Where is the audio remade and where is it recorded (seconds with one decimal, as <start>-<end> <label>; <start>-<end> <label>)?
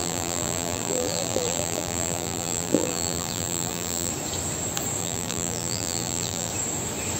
0.0-4.1 remade; 4.1-5.0 recorded; 5.0-6.5 remade; 6.5-7.2 recorded